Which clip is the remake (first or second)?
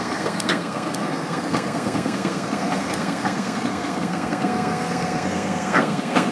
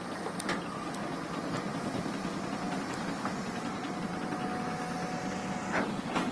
first